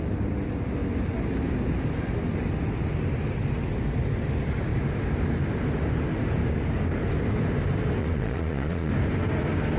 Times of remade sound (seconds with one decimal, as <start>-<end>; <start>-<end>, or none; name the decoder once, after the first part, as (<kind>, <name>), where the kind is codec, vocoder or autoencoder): 8.0-8.9 (vocoder, Vocos)